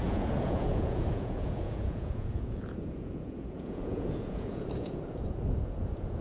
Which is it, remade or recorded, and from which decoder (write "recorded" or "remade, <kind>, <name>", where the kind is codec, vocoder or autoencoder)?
remade, vocoder, Vocos